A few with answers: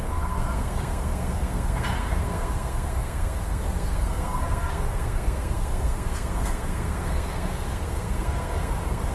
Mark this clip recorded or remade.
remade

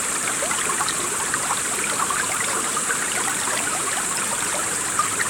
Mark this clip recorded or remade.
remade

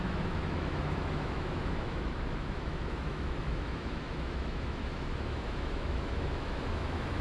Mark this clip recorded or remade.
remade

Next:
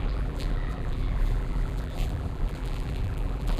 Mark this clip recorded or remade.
remade